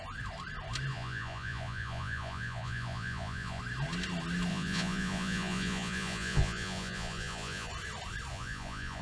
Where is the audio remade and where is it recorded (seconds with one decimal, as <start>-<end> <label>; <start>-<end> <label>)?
0.0-0.9 recorded; 0.9-3.6 remade; 3.6-4.5 recorded; 4.5-7.7 remade; 7.7-8.3 recorded; 8.3-9.0 remade